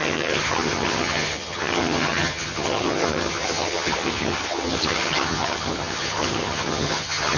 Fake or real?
fake